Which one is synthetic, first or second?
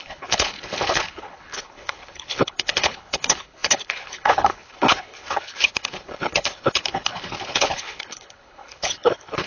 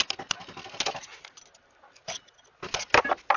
first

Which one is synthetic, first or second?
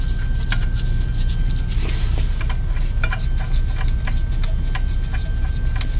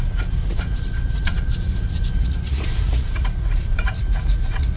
second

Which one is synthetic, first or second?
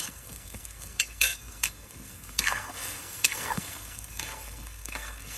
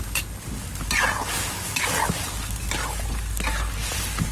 first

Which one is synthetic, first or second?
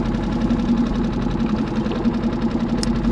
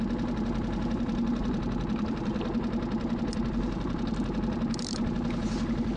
second